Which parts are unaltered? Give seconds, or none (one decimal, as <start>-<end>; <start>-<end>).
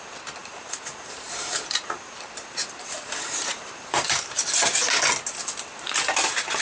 0.0-0.4; 4.4-6.6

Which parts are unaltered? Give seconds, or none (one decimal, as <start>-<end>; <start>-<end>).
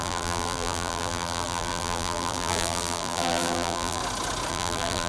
4.0-4.5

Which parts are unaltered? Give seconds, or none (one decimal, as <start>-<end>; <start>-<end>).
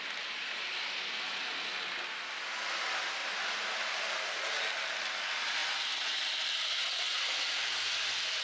0.0-5.6; 7.2-8.4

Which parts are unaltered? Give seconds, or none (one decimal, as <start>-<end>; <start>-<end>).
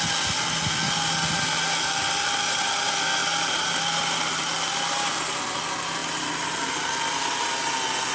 0.0-3.2; 5.1-8.1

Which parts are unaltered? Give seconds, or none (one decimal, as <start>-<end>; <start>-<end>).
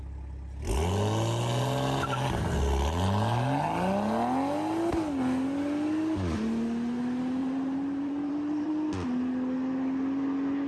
0.0-7.4; 8.7-10.7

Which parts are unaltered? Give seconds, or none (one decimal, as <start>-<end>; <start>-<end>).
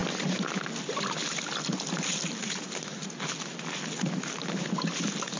0.0-5.4